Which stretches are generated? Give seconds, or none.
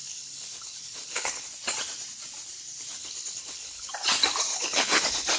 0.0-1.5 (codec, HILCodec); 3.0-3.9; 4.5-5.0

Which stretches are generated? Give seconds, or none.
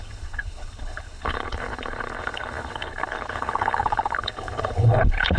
0.0-5.4 (codec, HILCodec)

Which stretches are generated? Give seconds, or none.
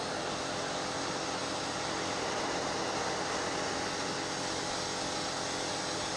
none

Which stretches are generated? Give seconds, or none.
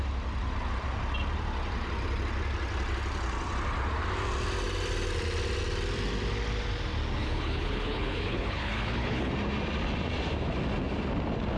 7.2-9.3 (codec, HILCodec)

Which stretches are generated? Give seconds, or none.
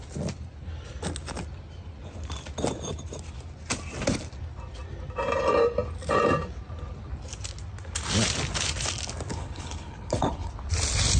9.3-10.5 (codec, HILCodec)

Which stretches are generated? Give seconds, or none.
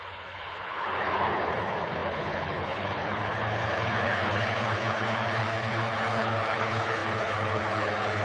0.0-8.2 (codec, HILCodec)